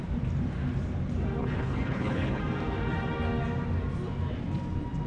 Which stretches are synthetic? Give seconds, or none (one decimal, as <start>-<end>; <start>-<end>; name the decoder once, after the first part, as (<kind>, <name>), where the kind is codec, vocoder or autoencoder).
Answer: 1.4-2.4 (codec, HILCodec)